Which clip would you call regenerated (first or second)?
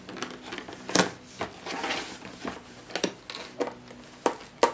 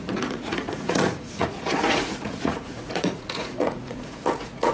second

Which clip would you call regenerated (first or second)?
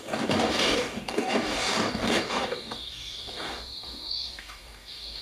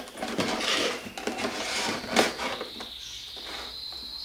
first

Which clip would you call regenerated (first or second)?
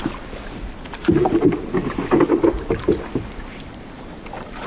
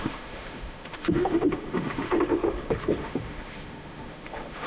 second